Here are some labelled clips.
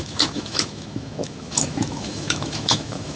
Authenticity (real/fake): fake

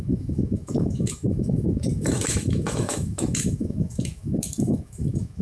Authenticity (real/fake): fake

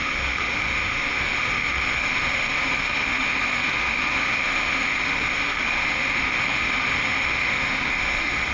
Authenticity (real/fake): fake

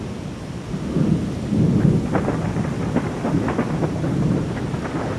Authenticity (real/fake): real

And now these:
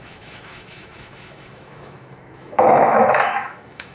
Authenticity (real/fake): fake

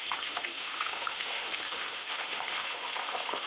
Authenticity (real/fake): fake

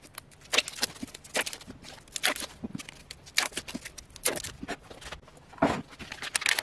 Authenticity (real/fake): real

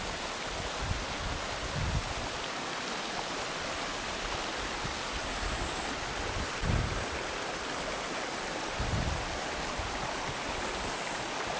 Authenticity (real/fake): real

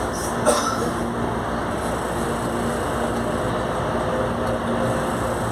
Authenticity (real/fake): real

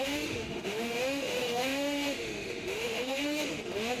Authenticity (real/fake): fake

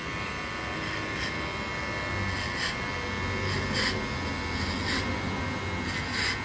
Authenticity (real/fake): real